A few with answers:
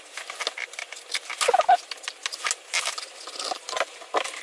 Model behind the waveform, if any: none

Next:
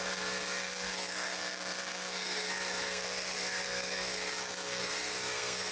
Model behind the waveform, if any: codec, SNAC